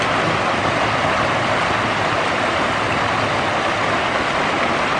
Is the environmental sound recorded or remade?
recorded